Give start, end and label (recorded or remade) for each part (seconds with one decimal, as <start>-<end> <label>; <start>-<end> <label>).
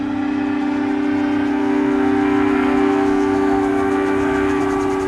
0.0-1.5 recorded; 1.5-4.6 remade; 4.6-5.1 recorded